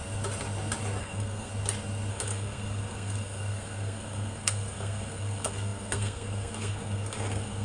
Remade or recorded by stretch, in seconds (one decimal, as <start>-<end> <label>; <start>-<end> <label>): 0.0-1.0 recorded; 1.0-1.5 remade; 1.5-2.1 recorded; 2.1-7.6 remade